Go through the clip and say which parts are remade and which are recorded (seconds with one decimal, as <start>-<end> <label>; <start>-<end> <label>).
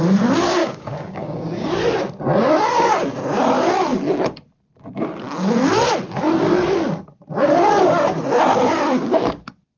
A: 0.0-0.6 recorded; 0.6-1.7 remade; 1.7-9.8 recorded